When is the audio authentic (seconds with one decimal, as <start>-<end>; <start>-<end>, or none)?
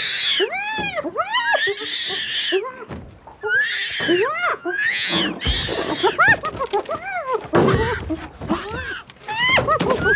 0.0-4.5; 5.2-10.2